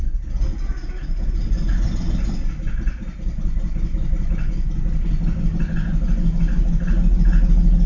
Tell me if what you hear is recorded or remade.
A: recorded